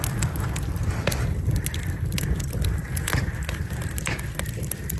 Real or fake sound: real